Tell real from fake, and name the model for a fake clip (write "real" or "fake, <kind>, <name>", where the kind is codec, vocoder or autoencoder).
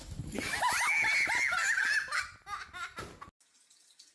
real